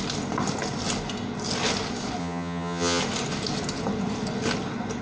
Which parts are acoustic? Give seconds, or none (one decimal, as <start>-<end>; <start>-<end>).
0.0-2.2; 3.0-5.0